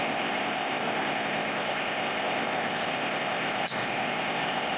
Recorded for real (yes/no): no